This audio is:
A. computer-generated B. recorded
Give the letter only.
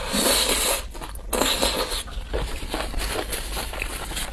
B